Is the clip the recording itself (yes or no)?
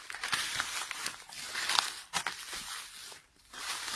yes